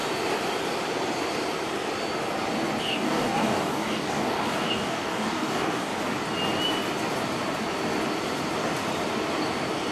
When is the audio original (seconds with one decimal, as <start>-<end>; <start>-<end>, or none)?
0.0-2.8; 5.9-9.9